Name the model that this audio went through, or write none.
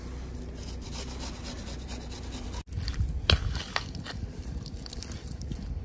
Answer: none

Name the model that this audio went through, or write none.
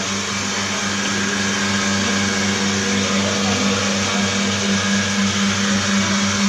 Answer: none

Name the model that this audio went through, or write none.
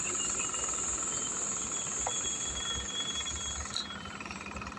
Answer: vocoder, BigVGAN v2